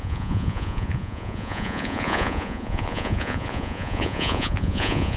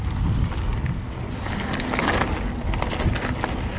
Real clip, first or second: second